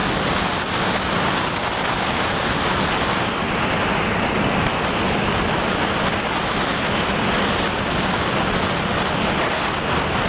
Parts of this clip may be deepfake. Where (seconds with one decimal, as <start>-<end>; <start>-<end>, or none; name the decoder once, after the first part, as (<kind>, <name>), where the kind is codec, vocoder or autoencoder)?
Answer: none